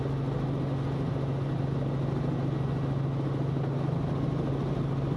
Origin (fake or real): real